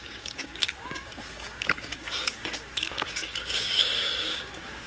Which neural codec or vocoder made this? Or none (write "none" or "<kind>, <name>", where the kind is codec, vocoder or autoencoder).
codec, DAC